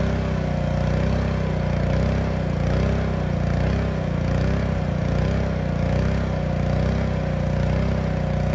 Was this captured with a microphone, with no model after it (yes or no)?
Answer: yes